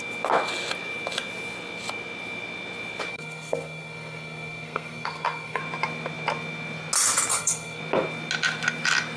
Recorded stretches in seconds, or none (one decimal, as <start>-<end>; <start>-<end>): 0.0-3.1; 5.6-7.3; 7.8-9.2